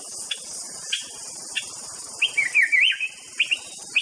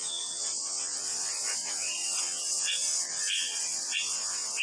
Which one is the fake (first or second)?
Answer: second